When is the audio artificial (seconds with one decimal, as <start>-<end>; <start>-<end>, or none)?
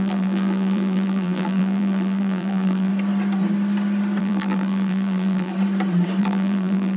0.0-2.9; 4.2-5.5; 6.2-7.0